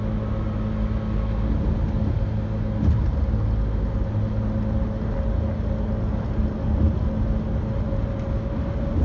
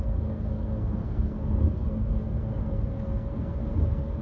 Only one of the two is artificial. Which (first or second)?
second